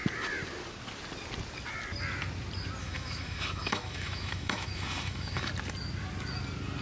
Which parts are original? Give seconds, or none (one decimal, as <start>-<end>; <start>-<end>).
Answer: 0.0-2.8; 5.5-6.8